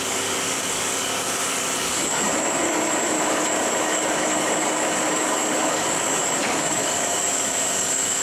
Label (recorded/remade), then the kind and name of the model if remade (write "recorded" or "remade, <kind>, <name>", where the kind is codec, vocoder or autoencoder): remade, codec, DAC